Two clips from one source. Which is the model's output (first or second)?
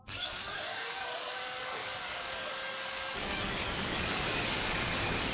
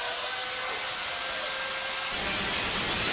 first